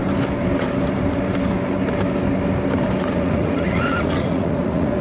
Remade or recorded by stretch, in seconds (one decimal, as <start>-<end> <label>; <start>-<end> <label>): 0.0-3.0 recorded; 3.0-5.0 remade